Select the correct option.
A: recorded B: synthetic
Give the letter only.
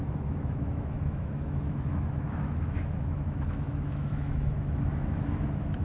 B